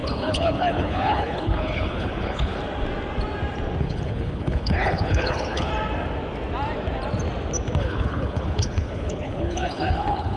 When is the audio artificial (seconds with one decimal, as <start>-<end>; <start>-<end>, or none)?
0.0-2.6; 3.8-5.7; 7.8-10.4